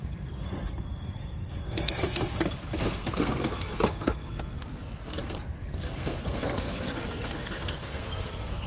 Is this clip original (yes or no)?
no